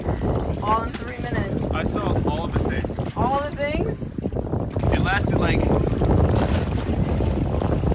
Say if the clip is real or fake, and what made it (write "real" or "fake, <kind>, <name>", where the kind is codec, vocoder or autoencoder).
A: real